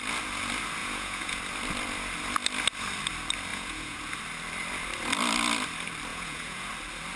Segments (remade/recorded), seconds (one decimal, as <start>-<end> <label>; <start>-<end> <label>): 0.0-0.8 recorded; 0.8-1.4 remade; 1.4-3.5 recorded; 3.5-4.0 remade; 4.0-6.1 recorded; 6.1-6.7 remade; 6.7-7.2 recorded